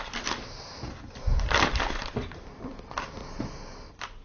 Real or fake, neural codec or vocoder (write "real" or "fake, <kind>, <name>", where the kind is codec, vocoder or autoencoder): real